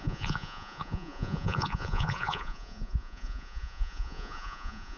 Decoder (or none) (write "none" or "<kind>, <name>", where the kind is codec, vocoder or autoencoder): vocoder, Vocos